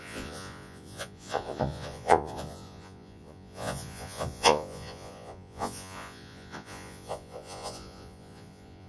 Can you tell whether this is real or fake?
fake